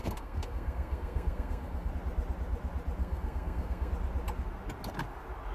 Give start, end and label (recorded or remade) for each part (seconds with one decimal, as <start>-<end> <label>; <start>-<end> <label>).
0.0-1.9 remade; 1.9-3.0 recorded; 3.0-3.9 remade; 3.9-5.5 recorded